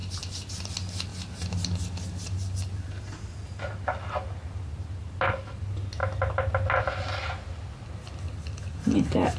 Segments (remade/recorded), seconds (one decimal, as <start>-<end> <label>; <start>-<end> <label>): 0.0-9.4 recorded